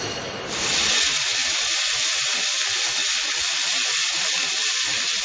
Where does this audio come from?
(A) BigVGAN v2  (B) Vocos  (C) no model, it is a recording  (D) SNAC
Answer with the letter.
C